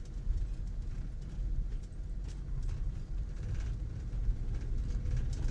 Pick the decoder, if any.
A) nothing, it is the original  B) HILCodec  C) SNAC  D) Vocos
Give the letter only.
A